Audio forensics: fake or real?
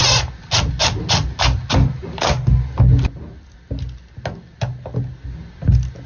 real